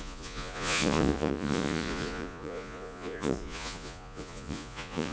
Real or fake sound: fake